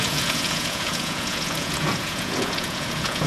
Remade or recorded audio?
remade